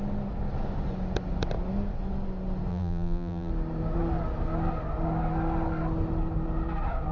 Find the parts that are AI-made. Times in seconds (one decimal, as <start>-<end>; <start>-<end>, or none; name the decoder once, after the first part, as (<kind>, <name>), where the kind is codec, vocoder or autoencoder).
2.7-3.5 (vocoder, BigVGAN v2)